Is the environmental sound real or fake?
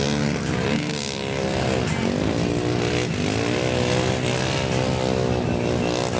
real